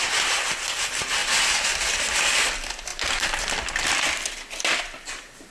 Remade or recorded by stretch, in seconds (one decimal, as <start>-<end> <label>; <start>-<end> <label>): 0.0-5.5 recorded